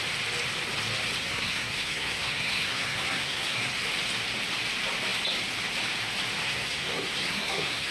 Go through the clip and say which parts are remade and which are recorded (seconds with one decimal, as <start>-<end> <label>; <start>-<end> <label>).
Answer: 0.0-1.2 recorded; 1.2-3.7 remade; 3.7-6.4 recorded; 6.4-7.9 remade